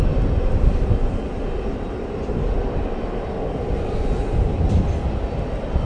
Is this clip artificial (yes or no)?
no